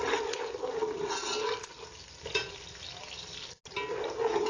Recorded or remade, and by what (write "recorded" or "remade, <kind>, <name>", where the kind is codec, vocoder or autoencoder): recorded